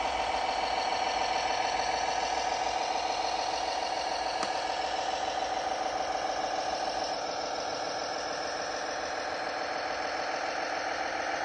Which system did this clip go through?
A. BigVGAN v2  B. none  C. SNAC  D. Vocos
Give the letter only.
B